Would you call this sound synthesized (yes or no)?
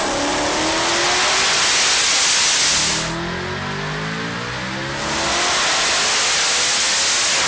no